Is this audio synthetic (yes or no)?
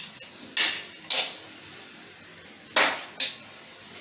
no